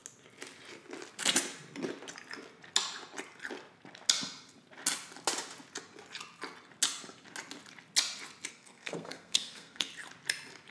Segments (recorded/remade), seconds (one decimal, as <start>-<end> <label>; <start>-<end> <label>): 0.0-8.5 recorded; 8.5-9.9 remade; 9.9-10.7 recorded